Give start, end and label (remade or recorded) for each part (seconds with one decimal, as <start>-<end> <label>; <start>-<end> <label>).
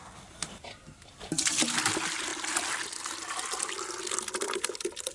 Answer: 0.0-0.4 recorded; 0.4-1.5 remade; 1.5-5.1 recorded